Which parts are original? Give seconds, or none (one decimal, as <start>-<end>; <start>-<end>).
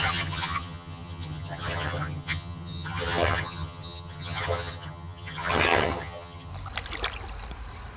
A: 6.5-8.0